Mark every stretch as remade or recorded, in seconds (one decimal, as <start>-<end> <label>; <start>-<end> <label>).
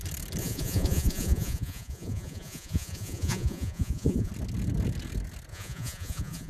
0.0-0.4 recorded; 0.4-4.3 remade; 4.3-5.5 recorded; 5.5-6.5 remade